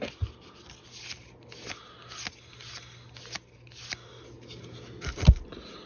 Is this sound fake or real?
real